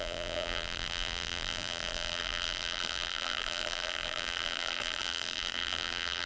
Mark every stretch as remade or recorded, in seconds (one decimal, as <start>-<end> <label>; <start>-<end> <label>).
0.0-6.3 remade